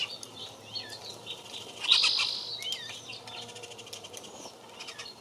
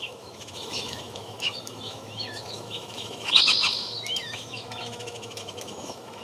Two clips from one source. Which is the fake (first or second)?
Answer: second